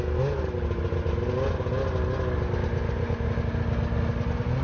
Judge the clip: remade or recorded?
recorded